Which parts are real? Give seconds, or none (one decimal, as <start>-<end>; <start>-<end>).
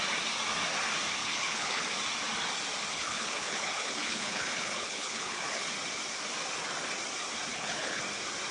0.0-1.2; 1.8-2.9; 5.7-7.5; 8.0-8.5